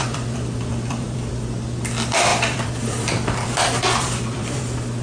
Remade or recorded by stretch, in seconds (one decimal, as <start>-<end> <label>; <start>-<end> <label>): 0.0-1.3 remade; 1.3-2.3 recorded; 2.3-4.6 remade; 4.6-5.0 recorded